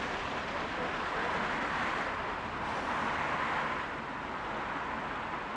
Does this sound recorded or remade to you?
recorded